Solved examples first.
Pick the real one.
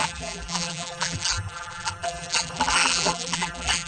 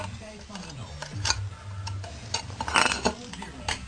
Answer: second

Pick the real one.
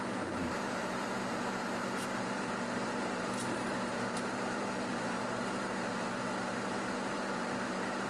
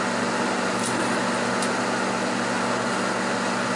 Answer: second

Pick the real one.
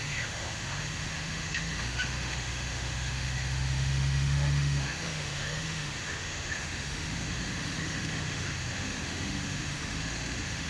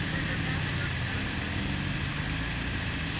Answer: second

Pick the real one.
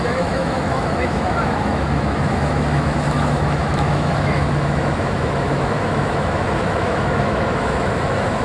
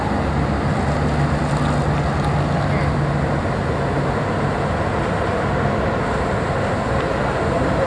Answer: second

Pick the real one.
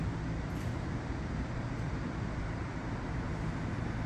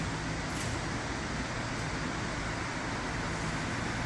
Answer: second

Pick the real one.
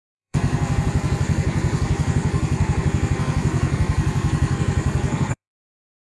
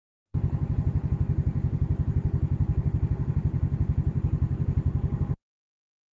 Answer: second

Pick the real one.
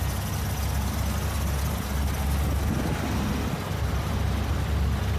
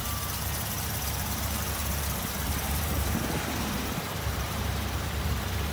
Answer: first